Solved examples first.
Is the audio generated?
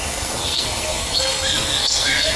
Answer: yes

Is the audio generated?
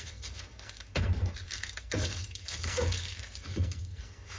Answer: yes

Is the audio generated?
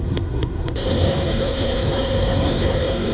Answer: yes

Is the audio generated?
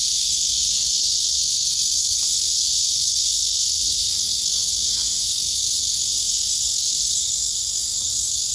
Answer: yes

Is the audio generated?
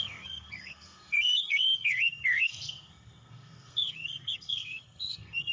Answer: yes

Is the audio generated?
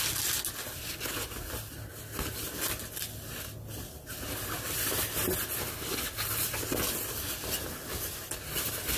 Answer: no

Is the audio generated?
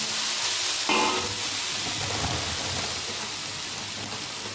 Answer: no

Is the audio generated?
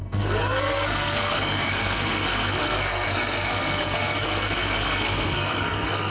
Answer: yes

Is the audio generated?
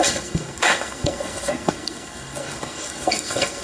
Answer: yes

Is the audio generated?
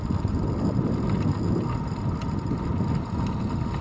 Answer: no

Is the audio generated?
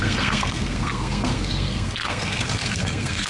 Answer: yes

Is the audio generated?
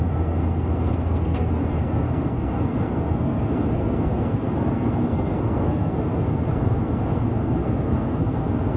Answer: yes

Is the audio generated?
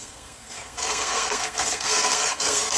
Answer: yes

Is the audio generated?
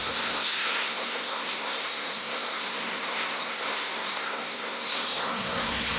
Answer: yes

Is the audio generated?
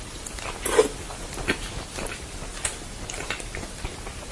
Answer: no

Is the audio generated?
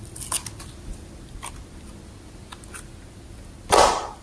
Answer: no